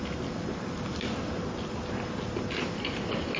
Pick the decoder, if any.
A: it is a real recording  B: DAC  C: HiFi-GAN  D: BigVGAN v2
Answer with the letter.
A